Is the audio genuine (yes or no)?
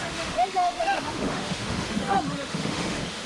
no